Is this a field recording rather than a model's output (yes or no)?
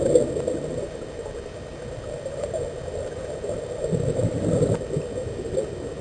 yes